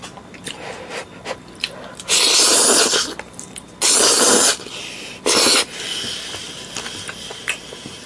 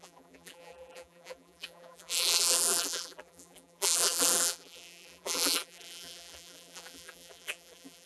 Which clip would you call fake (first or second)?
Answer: second